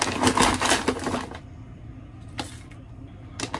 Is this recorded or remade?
recorded